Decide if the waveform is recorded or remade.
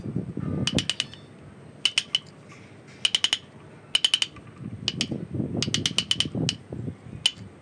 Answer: recorded